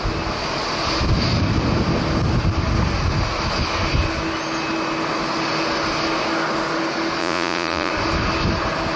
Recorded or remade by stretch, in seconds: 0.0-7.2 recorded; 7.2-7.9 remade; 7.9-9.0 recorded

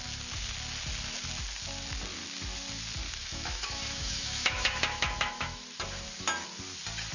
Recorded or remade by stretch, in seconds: 0.0-3.2 recorded; 3.2-5.6 remade; 5.6-7.1 recorded

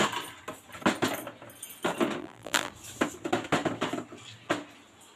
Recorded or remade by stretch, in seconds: 0.0-2.2 recorded; 2.2-2.7 remade; 2.7-5.2 recorded

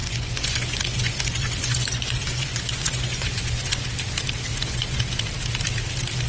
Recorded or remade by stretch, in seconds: 0.0-3.8 remade; 3.8-4.5 recorded; 4.5-5.0 remade; 5.0-6.3 recorded

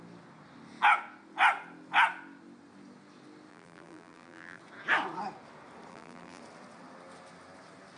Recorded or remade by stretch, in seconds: 0.0-3.5 recorded; 3.5-4.6 remade; 4.6-5.9 recorded; 5.9-6.4 remade; 6.4-8.0 recorded